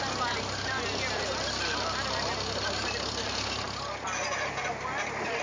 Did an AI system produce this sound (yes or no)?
no